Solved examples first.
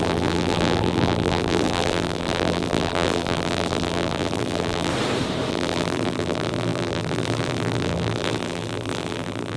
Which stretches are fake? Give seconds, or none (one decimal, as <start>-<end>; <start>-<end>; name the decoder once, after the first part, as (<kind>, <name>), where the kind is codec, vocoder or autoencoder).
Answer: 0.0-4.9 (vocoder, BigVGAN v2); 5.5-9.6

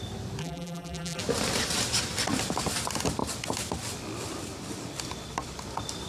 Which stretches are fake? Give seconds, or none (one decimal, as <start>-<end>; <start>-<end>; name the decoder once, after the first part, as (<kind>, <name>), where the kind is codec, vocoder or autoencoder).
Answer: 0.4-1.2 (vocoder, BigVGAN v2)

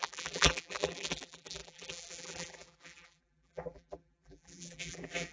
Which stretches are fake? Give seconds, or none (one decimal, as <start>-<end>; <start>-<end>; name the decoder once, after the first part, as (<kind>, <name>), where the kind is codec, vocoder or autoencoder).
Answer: 0.0-5.3 (vocoder, BigVGAN v2)

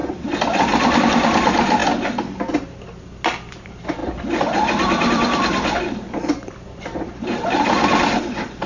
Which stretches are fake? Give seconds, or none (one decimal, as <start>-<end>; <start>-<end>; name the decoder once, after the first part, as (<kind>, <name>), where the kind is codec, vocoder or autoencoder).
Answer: 0.0-1.8 (vocoder, BigVGAN v2); 3.6-8.7